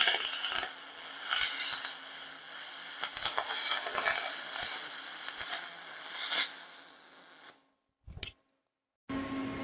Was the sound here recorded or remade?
recorded